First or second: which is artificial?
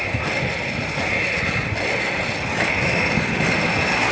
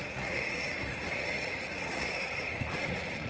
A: second